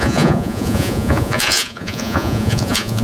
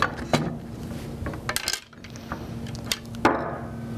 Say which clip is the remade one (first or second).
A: first